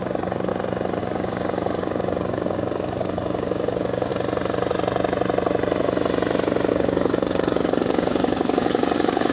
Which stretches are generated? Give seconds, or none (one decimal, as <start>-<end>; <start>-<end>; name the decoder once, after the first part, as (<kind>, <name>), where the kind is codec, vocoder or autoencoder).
0.0-0.5 (codec, DAC); 1.0-4.1; 6.7-9.3